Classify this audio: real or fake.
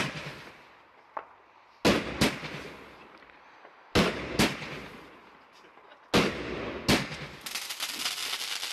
real